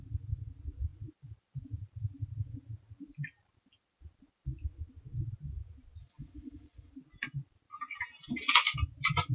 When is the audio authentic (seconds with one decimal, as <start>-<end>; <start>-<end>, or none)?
0.0-6.0; 6.9-9.3